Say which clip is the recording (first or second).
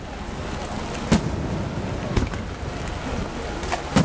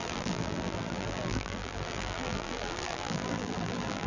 first